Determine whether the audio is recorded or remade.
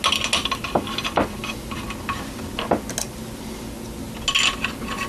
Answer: recorded